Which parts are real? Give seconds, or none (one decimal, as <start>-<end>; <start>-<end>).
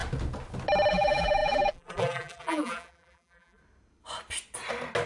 0.0-0.9; 3.6-5.1